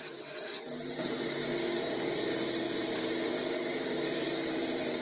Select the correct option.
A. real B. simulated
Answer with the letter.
B